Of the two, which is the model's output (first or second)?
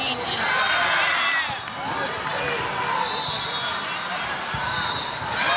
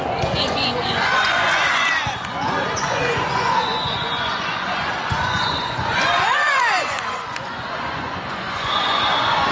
second